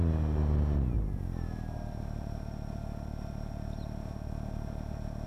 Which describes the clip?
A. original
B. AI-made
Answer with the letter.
A